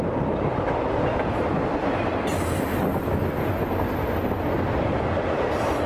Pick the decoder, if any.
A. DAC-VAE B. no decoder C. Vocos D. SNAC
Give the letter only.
B